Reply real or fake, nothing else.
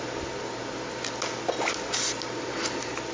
real